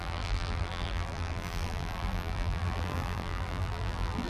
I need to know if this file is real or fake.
fake